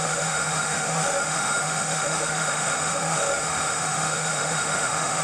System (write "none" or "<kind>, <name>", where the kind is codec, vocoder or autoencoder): autoencoder, DAC-VAE